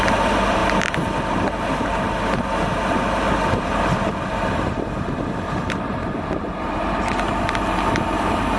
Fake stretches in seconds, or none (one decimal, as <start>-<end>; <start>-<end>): 0.0-0.6; 1.3-8.6